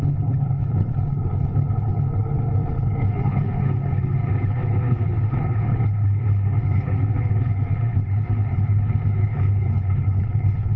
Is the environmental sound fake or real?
fake